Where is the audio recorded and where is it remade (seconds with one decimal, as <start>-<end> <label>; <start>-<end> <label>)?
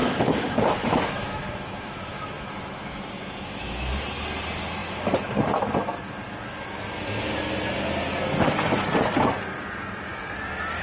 0.0-3.9 remade; 3.9-10.8 recorded